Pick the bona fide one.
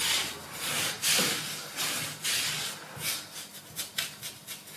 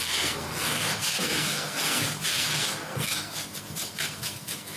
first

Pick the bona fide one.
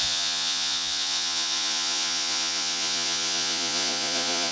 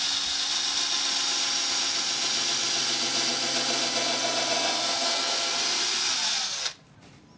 second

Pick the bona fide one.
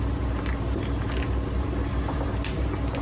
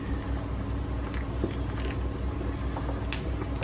second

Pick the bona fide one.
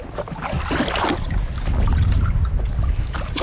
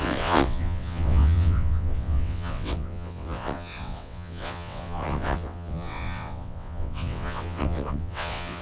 first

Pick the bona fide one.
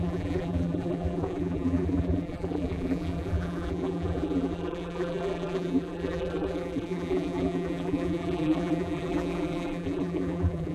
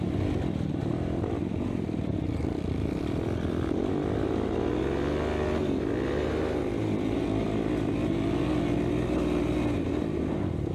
second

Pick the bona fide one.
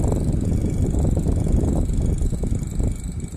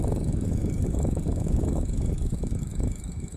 first